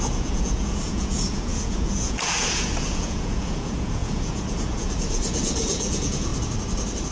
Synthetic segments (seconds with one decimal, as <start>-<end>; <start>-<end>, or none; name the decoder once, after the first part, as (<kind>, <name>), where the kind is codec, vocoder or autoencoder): 0.0-6.3 (vocoder, Vocos)